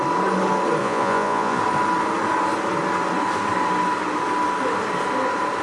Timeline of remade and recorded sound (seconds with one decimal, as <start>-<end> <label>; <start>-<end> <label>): 0.0-0.8 recorded; 0.8-1.6 remade; 1.6-5.6 recorded